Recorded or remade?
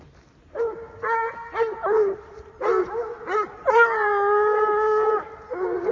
recorded